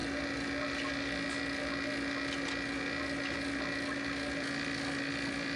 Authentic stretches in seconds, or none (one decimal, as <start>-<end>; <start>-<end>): 0.0-5.6